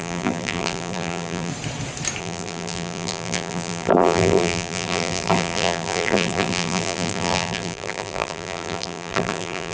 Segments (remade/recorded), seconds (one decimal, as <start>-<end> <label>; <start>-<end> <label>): 0.0-1.5 remade; 1.5-2.2 recorded; 2.2-9.7 remade